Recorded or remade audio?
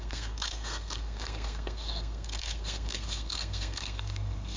remade